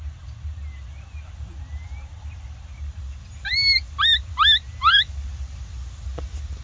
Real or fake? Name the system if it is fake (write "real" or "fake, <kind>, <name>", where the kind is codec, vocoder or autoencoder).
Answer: real